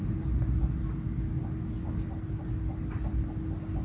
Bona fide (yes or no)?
yes